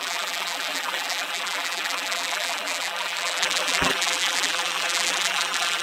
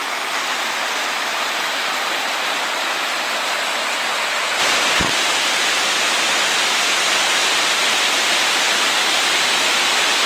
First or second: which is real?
second